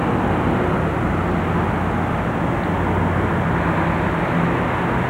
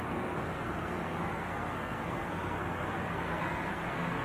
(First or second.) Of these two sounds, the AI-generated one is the second